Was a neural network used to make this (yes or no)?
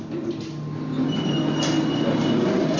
no